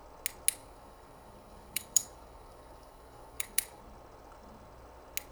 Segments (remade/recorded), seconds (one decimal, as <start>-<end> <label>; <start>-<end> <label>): 0.0-0.6 recorded; 0.6-3.8 remade; 3.8-5.3 recorded